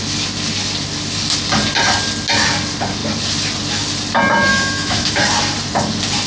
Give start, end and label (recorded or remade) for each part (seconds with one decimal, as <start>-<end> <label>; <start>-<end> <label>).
0.0-4.5 recorded; 4.5-5.2 remade; 5.2-6.3 recorded